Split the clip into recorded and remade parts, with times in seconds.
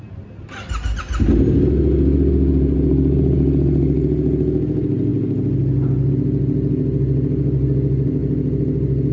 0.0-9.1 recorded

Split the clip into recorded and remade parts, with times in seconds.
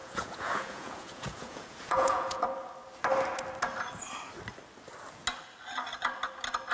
0.0-2.4 remade; 2.4-6.7 recorded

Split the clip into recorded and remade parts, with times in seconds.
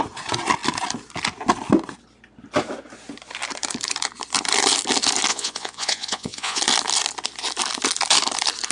0.0-5.3 recorded; 5.3-6.6 remade; 6.6-8.7 recorded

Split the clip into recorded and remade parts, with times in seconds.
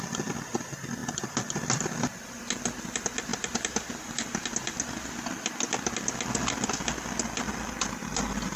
0.0-8.6 recorded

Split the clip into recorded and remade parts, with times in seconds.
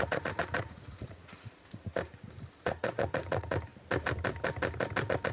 0.0-1.9 remade; 1.9-2.6 recorded; 2.6-3.7 remade; 3.7-5.3 recorded